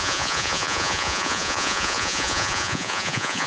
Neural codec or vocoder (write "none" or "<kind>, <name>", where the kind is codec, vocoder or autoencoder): vocoder, Vocos